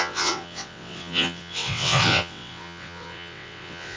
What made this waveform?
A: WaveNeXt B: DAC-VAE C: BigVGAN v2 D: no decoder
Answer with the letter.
A